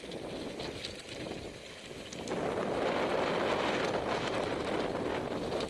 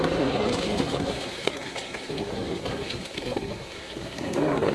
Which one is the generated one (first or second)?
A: second